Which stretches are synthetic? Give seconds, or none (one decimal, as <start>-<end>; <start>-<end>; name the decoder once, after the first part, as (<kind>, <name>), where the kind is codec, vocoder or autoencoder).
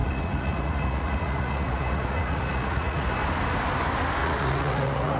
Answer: 0.0-3.1 (vocoder, Vocos); 4.2-5.2